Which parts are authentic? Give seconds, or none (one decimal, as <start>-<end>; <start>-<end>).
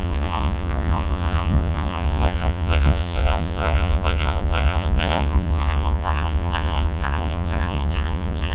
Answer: none